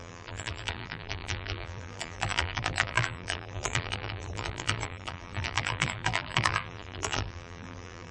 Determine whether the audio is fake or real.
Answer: fake